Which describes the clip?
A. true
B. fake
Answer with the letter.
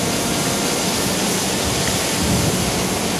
A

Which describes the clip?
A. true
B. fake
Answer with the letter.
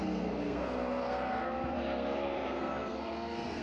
B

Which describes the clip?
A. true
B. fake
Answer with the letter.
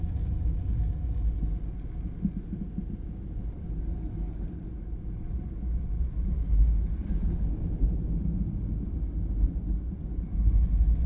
A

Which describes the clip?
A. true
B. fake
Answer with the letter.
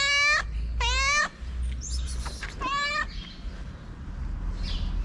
A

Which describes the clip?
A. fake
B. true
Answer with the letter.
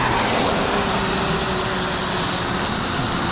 B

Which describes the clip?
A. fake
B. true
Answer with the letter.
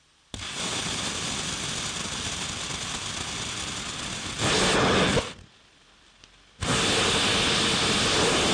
B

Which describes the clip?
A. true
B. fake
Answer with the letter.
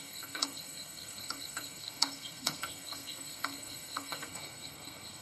B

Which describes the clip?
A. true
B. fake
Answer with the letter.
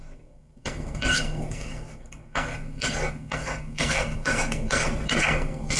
B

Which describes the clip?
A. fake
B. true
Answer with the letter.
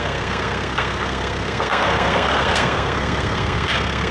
A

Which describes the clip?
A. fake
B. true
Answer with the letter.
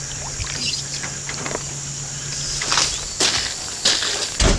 B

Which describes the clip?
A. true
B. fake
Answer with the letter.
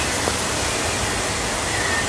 A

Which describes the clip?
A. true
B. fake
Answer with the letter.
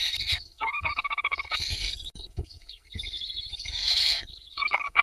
B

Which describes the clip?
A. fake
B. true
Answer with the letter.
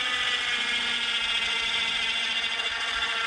B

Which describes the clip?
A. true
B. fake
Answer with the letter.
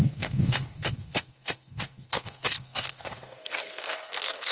B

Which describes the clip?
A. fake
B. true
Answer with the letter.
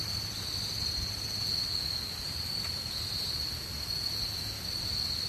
B